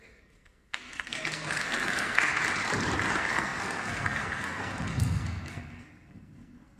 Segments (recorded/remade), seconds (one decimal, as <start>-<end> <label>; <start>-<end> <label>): 0.0-2.4 remade; 2.4-3.1 recorded; 3.1-6.8 remade